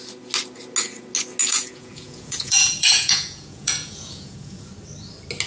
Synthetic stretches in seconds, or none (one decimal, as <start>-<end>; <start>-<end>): 1.4-4.7